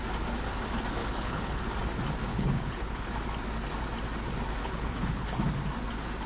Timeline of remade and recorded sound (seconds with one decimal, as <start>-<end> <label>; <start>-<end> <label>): 0.0-1.0 recorded; 1.0-1.6 remade; 1.6-2.3 recorded; 2.3-3.1 remade; 3.1-4.6 recorded; 4.6-5.4 remade; 5.4-6.3 recorded